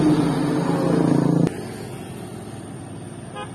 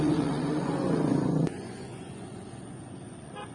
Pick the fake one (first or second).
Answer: second